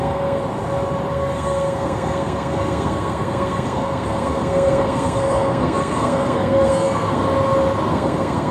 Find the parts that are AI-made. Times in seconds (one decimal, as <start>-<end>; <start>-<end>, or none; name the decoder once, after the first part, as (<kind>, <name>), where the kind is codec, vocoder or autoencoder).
0.0-0.4 (codec, SNAC); 1.1-7.2; 7.9-8.5

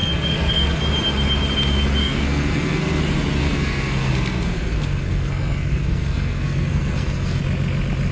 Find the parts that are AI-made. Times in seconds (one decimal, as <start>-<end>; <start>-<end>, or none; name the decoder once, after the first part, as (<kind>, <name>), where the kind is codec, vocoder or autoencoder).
0.0-0.8 (codec, SNAC); 2.0-3.0; 3.4-7.4

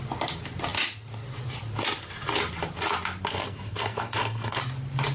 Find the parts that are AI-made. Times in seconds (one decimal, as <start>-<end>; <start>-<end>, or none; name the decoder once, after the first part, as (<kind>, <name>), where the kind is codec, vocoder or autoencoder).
3.3-4.6 (codec, SNAC)

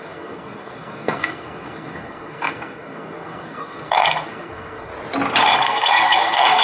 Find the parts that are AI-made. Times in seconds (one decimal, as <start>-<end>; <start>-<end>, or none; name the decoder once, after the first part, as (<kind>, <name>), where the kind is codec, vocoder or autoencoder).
0.0-4.9 (codec, SNAC); 5.6-6.6

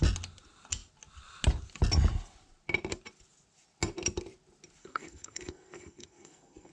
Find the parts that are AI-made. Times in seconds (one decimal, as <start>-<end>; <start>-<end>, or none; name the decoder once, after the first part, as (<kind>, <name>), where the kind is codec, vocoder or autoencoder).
4.8-6.7 (codec, SNAC)

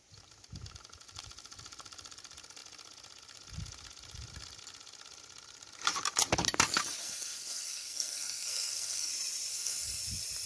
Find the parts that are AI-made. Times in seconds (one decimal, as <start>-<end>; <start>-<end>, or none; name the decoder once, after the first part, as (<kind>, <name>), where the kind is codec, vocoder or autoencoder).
7.0-9.1 (codec, SNAC); 9.5-10.0